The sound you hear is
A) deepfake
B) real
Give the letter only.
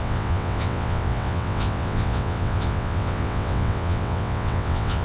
A